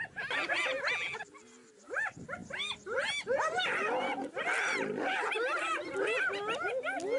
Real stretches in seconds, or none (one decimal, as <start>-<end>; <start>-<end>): 0.0-7.2